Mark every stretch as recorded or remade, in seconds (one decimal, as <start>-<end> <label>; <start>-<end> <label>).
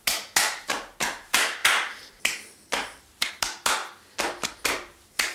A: 0.0-3.8 remade; 3.8-4.6 recorded; 4.6-5.3 remade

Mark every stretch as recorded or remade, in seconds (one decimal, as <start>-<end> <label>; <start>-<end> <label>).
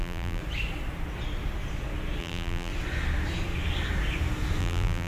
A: 0.0-0.4 remade; 0.4-2.2 recorded; 2.2-2.7 remade; 2.7-4.6 recorded; 4.6-5.1 remade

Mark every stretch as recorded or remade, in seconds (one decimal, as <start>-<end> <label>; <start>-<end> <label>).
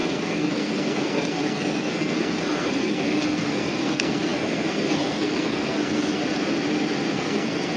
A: 0.0-6.2 remade; 6.2-7.1 recorded; 7.1-7.8 remade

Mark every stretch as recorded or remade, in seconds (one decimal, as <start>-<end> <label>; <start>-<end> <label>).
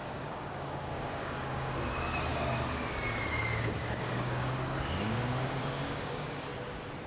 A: 0.0-6.5 remade; 6.5-7.1 recorded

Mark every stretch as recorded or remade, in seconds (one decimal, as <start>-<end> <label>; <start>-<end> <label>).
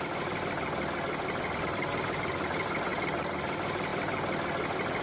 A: 0.0-5.0 recorded